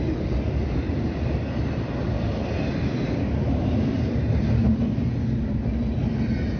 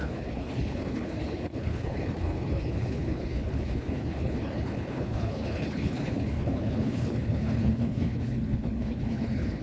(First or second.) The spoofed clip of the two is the second